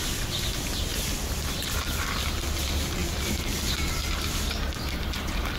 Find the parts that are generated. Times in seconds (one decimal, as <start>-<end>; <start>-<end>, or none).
none